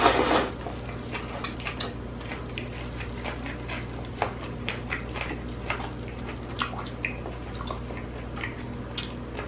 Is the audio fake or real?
real